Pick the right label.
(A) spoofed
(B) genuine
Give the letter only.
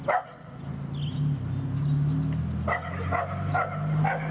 B